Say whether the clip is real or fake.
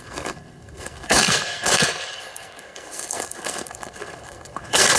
fake